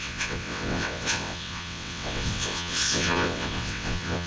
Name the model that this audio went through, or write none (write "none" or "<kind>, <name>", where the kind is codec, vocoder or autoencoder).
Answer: vocoder, WaveNeXt